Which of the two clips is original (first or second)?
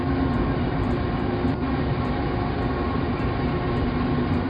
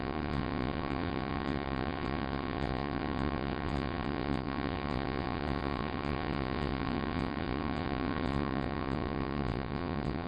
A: first